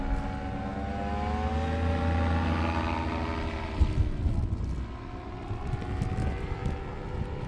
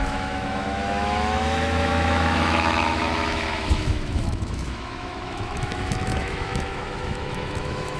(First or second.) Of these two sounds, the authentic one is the first